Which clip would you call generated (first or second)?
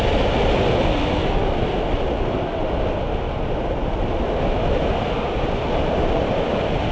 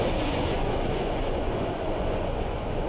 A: second